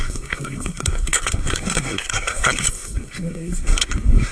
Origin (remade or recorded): remade